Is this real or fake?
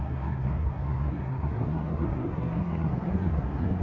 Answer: fake